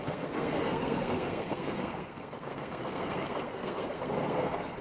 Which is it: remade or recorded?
remade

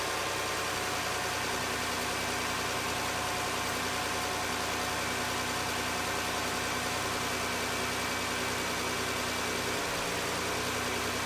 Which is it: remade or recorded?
recorded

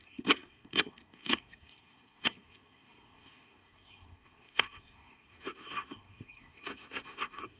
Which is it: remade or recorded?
remade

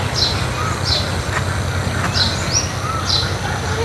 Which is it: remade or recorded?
recorded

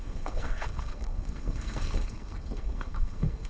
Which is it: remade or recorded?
remade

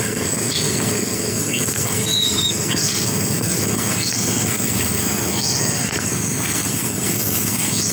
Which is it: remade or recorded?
remade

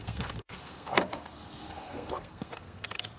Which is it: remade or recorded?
remade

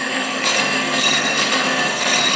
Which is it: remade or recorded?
remade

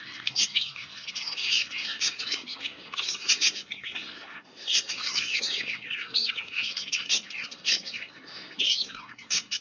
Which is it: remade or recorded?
remade